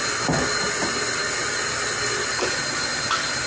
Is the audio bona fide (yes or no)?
yes